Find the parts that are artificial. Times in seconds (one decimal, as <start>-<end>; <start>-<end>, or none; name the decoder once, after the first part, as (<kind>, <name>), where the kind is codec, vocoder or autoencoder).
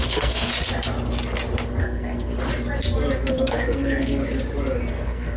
0.0-0.5 (codec, SNAC); 1.8-2.3; 3.3-4.2; 4.9-5.4